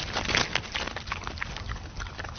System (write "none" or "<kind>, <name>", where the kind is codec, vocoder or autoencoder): none